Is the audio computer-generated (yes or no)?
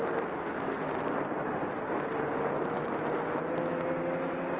no